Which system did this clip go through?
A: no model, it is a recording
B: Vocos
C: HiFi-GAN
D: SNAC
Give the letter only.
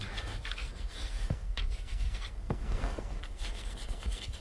D